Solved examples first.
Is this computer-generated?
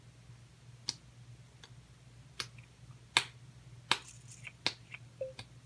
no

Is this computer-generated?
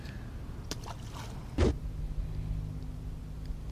no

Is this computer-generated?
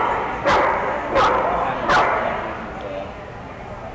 no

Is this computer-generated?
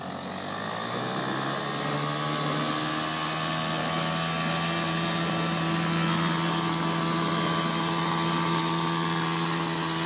no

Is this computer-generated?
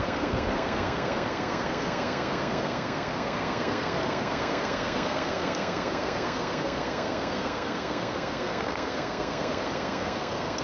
yes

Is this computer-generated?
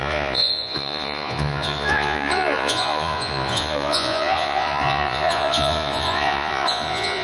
yes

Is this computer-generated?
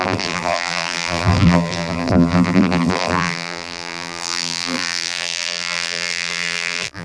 yes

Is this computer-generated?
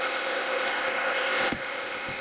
yes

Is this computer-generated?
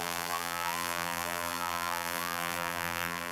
yes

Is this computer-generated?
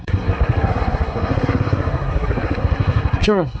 yes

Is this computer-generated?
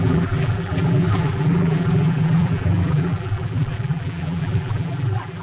yes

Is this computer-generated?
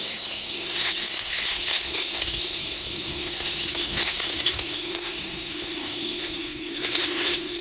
yes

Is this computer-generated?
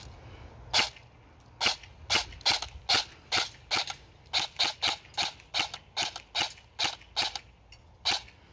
no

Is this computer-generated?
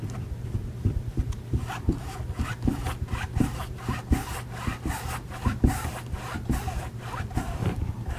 no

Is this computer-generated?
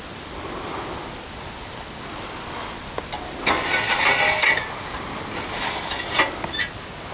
no